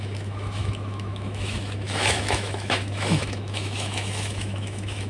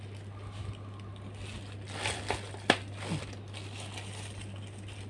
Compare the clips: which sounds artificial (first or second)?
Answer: first